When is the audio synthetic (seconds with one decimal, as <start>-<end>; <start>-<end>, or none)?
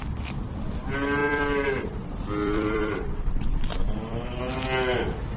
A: 1.2-4.4